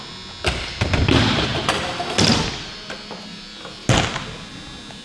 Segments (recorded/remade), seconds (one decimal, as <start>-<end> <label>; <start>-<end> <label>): 0.0-5.0 recorded